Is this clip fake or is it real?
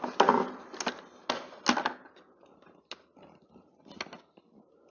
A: real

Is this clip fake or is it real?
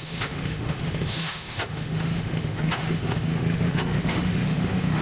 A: fake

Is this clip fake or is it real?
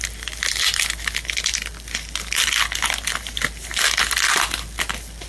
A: real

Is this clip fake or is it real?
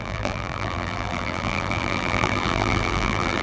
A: fake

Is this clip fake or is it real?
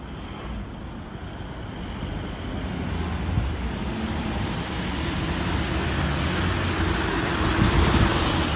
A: real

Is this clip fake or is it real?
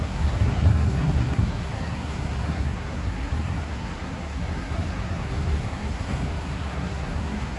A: fake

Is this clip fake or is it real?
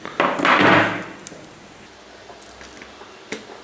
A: real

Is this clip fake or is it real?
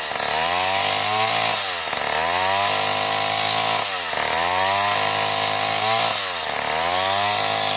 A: real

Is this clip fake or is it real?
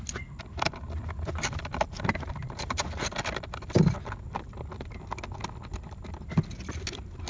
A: real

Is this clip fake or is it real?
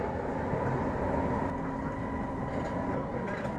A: real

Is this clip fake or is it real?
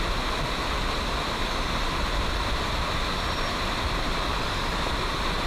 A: real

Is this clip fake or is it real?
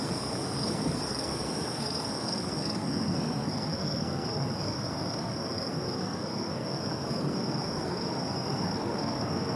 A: fake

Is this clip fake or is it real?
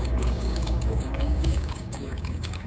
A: fake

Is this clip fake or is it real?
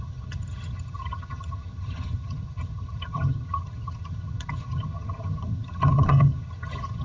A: fake